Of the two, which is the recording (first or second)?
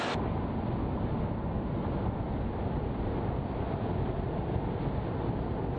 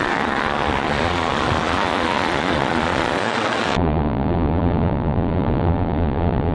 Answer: first